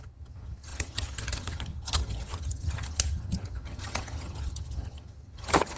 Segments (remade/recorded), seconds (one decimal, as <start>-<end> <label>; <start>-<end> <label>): 0.0-5.8 remade